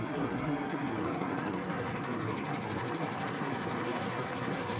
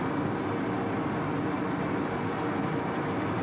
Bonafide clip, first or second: second